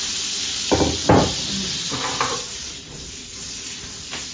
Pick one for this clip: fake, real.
real